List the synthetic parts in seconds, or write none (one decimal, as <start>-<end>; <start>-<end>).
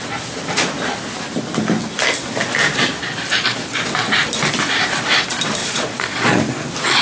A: 5.6-6.4